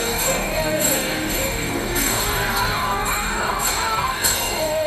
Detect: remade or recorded remade